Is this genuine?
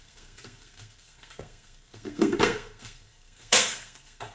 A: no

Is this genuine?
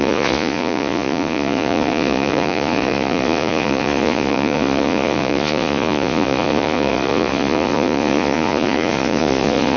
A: no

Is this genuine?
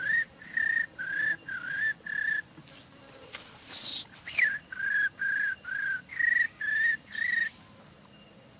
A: yes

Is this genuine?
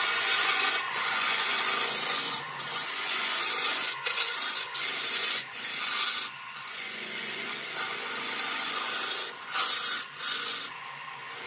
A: no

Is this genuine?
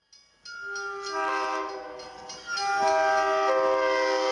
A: yes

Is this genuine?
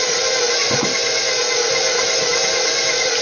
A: yes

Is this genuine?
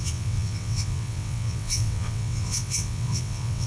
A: no